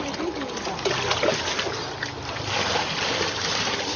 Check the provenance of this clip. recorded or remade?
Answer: recorded